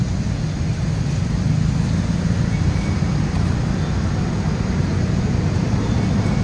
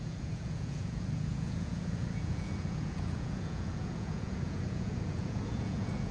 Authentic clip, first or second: first